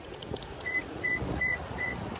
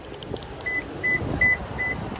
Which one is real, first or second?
second